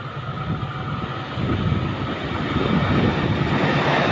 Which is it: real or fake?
real